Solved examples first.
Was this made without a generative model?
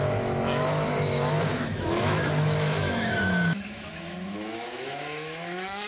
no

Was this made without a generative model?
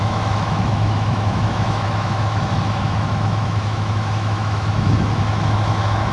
no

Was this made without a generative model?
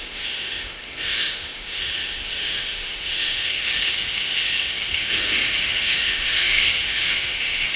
no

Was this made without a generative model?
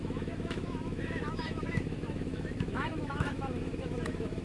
no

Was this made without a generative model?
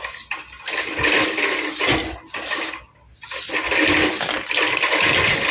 yes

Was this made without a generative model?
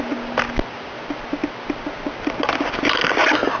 yes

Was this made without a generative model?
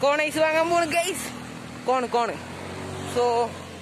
yes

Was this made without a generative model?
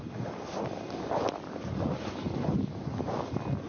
yes